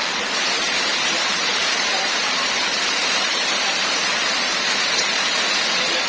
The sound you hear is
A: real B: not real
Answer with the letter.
B